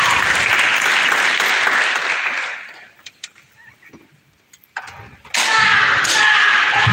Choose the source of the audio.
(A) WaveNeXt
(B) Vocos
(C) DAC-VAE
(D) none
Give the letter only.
D